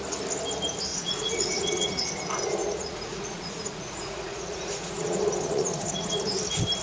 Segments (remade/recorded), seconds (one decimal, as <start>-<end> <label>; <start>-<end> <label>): 0.0-0.9 recorded; 0.9-2.1 remade; 2.1-2.6 recorded; 2.6-6.2 remade; 6.2-6.8 recorded